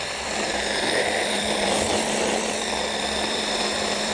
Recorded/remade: remade